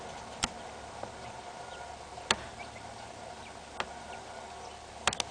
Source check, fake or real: real